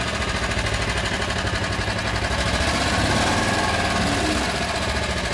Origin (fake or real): real